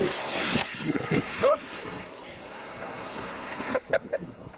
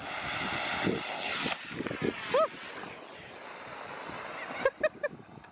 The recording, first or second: second